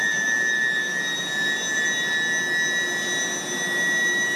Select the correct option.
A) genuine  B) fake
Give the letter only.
A